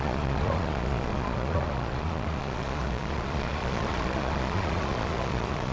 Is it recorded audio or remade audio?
remade